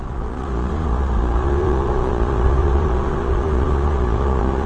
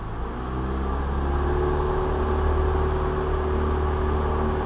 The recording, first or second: second